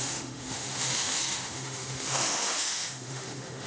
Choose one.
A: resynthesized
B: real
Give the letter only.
A